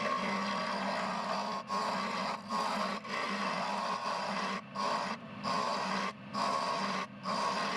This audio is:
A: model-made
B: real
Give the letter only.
B